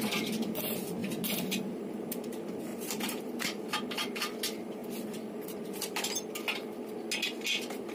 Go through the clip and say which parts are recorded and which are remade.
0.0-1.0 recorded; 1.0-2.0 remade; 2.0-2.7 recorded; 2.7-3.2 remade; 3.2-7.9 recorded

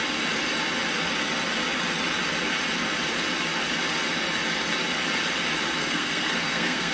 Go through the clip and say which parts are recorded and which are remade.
0.0-5.8 recorded; 5.8-6.9 remade

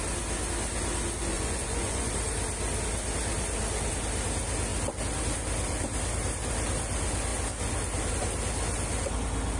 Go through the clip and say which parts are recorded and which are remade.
0.0-1.3 recorded; 1.3-2.1 remade; 2.1-9.6 recorded